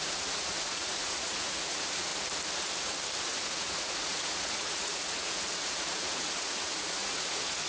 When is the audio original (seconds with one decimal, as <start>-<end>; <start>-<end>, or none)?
2.1-3.2